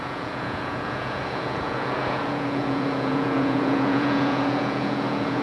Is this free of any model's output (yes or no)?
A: no